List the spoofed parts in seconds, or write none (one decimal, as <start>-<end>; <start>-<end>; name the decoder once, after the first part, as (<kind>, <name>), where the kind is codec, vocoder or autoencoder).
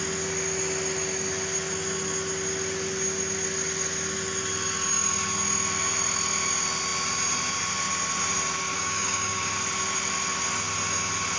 8.7-9.5 (codec, DAC)